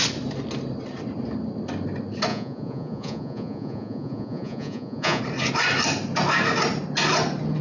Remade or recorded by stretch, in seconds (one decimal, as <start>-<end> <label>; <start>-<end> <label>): 0.0-2.3 recorded; 2.3-5.2 remade; 5.2-7.6 recorded